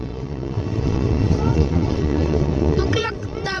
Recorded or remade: remade